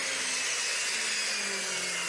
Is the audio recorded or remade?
recorded